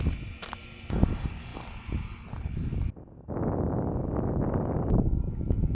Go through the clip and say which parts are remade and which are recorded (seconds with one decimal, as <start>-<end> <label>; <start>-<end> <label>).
0.0-5.7 recorded